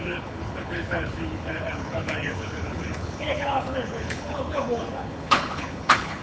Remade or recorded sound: remade